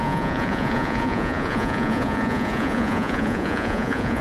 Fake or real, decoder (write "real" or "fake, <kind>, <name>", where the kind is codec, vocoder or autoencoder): fake, vocoder, Vocos